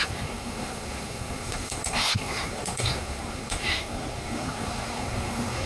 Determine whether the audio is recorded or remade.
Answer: remade